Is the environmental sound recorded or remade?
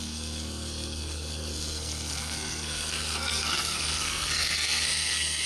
remade